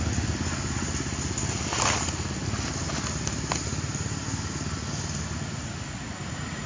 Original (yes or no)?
yes